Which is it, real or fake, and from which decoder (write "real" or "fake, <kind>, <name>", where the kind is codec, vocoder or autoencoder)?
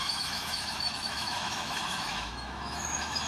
fake, autoencoder, DAC-VAE